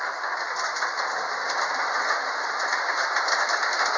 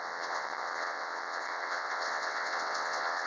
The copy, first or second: second